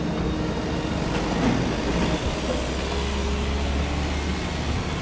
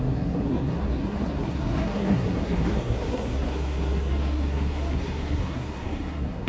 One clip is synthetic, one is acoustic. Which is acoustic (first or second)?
first